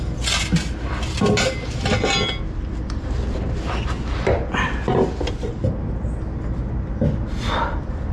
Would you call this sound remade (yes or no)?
no